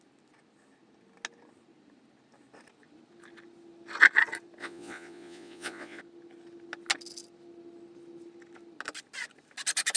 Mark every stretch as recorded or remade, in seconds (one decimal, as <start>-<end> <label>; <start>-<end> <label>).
0.0-4.6 recorded; 4.6-6.0 remade; 6.0-10.0 recorded